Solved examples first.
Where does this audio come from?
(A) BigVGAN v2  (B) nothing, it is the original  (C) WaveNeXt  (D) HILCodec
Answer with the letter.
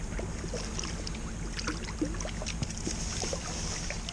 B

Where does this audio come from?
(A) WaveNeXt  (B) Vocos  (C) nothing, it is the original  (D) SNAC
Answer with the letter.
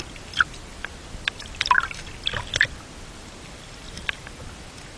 C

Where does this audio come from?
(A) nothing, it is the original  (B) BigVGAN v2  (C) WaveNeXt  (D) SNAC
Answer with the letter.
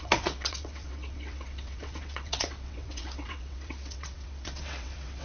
C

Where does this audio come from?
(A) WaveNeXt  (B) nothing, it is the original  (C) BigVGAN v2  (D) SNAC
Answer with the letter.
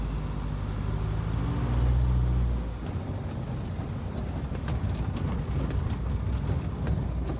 B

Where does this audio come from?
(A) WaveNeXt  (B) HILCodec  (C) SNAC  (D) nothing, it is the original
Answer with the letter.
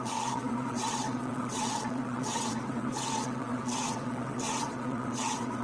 A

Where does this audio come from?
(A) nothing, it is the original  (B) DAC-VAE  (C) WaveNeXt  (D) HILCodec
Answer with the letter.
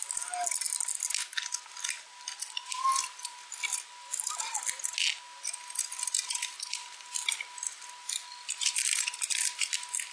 A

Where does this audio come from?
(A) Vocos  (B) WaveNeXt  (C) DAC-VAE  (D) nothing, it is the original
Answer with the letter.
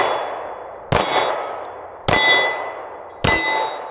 D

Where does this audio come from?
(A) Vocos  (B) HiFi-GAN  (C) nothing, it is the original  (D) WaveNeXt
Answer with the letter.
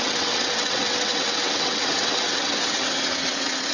D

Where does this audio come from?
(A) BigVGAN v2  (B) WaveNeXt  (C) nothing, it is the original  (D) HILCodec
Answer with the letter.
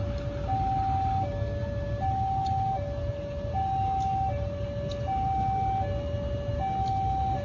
C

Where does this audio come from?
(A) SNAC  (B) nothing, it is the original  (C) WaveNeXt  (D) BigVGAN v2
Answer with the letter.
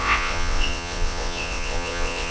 C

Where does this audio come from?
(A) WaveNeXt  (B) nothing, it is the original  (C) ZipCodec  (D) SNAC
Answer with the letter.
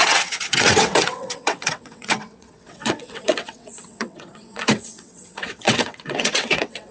A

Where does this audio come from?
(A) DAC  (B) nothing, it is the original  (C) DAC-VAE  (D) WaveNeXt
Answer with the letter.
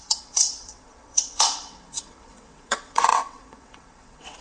D